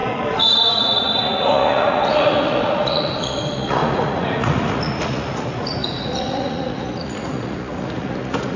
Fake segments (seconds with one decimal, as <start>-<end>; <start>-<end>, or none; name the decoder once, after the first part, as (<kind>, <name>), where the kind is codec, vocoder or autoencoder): 0.0-8.6 (vocoder, Vocos)